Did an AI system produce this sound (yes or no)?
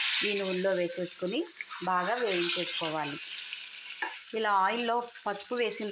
no